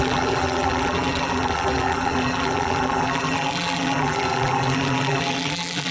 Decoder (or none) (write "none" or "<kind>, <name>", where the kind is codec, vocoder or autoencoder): vocoder, BigVGAN v2